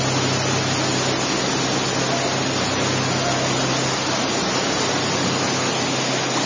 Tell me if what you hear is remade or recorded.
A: recorded